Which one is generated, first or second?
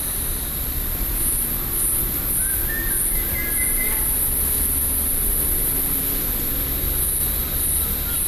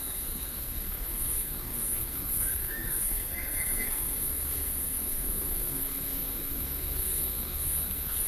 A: second